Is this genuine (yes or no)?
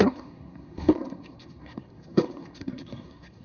no